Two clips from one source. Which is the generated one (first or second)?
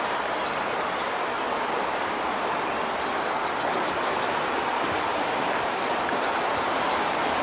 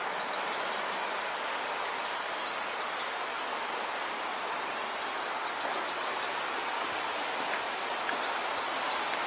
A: first